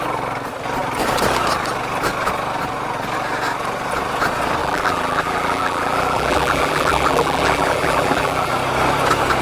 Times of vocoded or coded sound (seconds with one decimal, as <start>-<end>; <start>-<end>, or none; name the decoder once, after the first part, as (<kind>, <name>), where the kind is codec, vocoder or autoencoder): 4.6-8.5 (vocoder, BigVGAN v2)